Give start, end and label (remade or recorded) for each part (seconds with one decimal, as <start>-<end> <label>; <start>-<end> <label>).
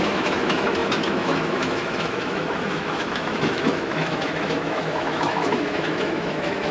0.0-6.7 remade